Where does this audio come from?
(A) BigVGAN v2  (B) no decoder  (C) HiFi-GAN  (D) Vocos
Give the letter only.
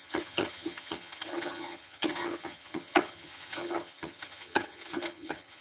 C